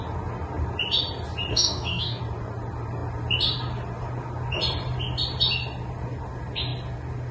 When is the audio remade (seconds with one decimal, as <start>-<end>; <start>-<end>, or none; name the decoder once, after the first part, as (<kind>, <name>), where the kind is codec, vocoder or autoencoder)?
1.5-2.2 (codec, DAC)